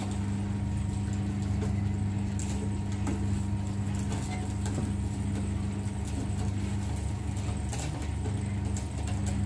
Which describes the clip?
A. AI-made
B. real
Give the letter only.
B